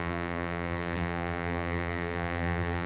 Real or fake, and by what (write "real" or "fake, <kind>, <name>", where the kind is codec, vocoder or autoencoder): fake, vocoder, BigVGAN v2